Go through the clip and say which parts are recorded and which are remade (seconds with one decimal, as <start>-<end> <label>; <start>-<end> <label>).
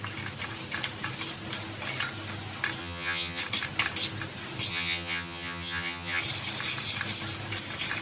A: 0.0-2.8 recorded; 2.8-3.4 remade; 3.4-4.7 recorded; 4.7-6.2 remade; 6.2-8.0 recorded